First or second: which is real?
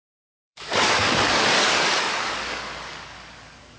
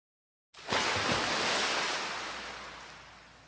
second